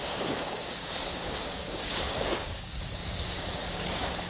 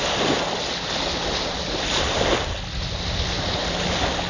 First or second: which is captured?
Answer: second